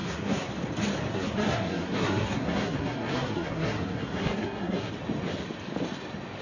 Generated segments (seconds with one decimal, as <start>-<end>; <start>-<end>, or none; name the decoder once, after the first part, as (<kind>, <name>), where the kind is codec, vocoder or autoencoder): 0.0-0.5 (codec, SNAC); 1.1-4.9